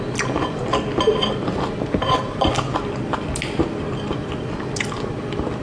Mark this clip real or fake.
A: real